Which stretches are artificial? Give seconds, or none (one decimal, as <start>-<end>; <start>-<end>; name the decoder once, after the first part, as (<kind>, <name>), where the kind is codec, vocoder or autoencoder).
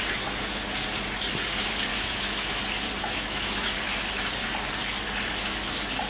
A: 1.9-2.6 (autoencoder, DAC-VAE); 3.0-3.8